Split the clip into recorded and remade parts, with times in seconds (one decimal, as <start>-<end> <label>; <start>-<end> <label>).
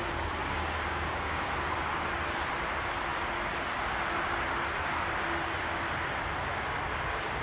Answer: 0.0-0.4 recorded; 0.4-1.5 remade; 1.5-6.5 recorded; 6.5-7.4 remade